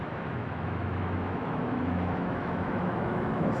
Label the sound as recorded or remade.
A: remade